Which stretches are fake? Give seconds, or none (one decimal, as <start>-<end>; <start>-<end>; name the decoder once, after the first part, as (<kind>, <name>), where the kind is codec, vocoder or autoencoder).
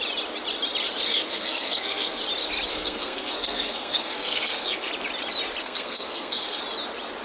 1.1-2.2 (codec, SNAC); 2.7-4.9; 5.6-6.6